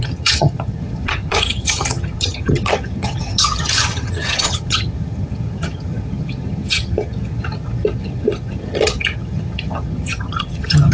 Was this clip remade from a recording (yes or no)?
yes